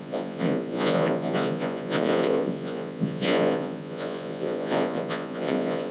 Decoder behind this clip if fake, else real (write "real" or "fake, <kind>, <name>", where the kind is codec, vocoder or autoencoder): fake, vocoder, Vocos